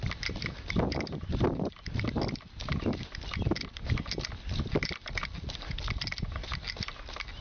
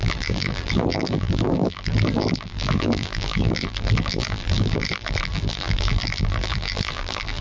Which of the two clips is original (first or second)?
first